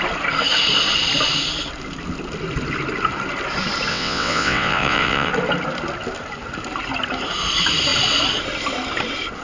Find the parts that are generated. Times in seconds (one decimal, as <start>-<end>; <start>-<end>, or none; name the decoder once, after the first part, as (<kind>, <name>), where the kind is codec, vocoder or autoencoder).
3.9-5.3 (vocoder, WaveNeXt)